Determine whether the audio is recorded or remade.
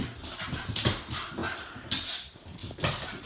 recorded